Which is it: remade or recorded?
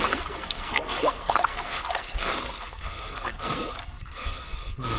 remade